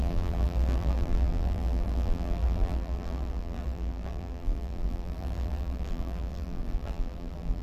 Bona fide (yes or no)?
no